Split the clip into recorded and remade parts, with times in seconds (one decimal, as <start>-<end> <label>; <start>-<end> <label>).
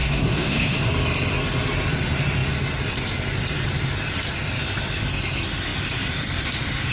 0.0-0.9 remade; 0.9-6.9 recorded